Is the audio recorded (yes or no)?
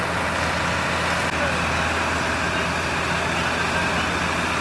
yes